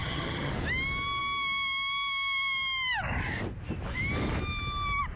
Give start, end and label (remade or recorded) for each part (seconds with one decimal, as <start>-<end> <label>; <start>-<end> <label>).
0.0-0.5 remade; 0.5-5.2 recorded